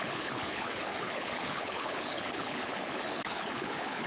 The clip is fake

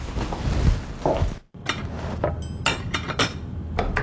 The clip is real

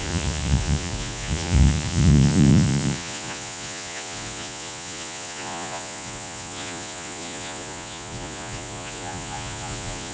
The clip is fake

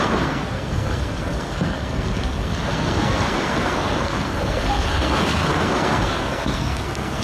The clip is fake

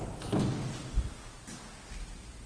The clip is real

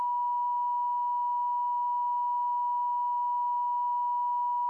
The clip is real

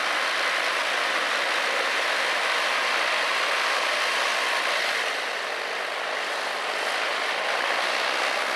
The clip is real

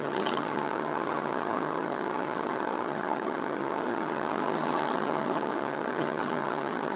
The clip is fake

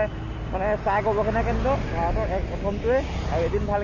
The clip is real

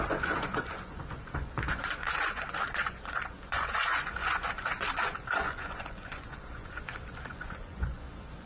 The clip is fake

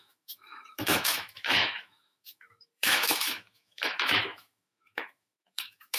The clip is fake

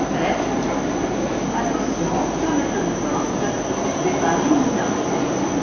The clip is real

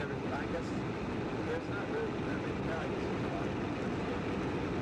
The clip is fake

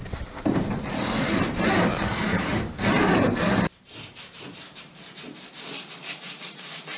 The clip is fake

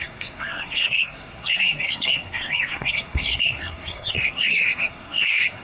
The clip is fake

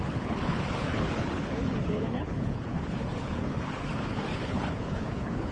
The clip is fake